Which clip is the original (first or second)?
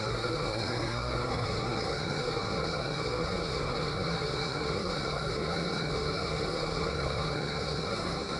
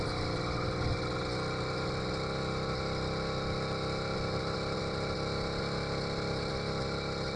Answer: second